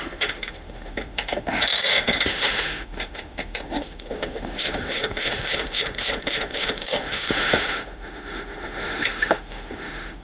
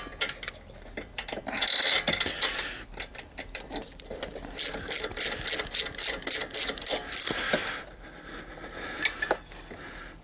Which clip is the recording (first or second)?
second